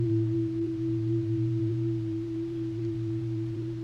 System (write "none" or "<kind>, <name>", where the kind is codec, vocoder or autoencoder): vocoder, BigVGAN v2